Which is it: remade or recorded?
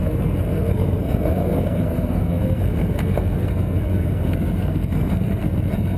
remade